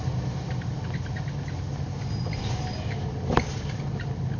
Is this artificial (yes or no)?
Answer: no